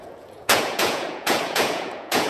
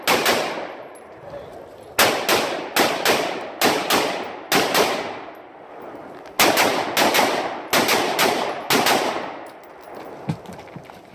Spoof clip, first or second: first